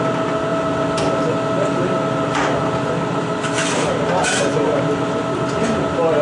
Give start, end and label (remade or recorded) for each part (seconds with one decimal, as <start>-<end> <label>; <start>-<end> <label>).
0.0-6.2 recorded